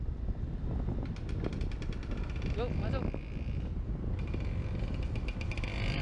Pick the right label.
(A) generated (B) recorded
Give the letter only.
B